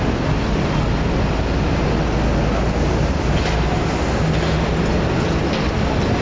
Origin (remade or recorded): recorded